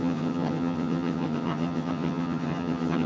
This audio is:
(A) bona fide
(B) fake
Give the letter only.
B